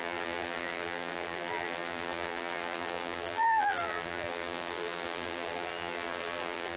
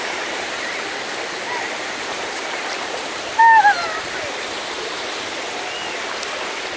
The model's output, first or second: first